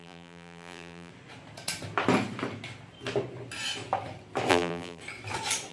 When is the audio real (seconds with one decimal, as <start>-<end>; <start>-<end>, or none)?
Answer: 1.1-4.5; 5.0-5.7